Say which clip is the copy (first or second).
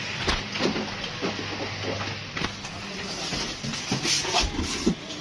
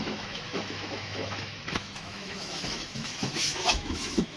second